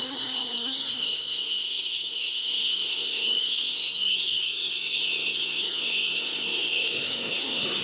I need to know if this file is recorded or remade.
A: remade